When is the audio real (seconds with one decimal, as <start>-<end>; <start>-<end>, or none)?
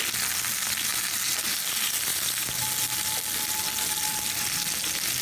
0.0-5.2